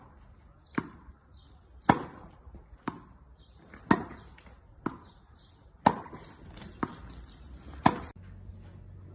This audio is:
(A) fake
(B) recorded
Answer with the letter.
B